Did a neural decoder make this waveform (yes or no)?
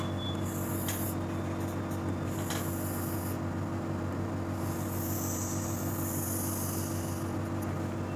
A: no